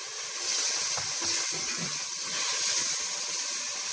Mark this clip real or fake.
real